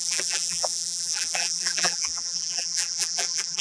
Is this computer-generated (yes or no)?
yes